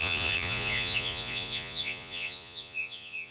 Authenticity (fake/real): fake